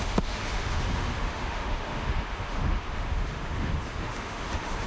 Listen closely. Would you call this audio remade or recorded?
remade